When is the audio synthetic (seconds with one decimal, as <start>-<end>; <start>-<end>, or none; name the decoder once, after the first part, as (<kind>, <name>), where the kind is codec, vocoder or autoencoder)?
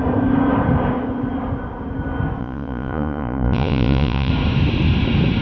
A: 2.4-4.3 (vocoder, Vocos)